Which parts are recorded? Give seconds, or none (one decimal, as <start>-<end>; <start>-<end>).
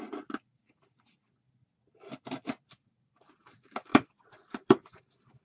0.0-3.9; 5.0-5.4